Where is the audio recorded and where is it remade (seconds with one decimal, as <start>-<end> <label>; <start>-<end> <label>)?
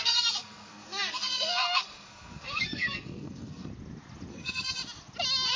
0.0-3.7 remade; 3.7-4.3 recorded; 4.3-4.8 remade; 4.8-5.6 recorded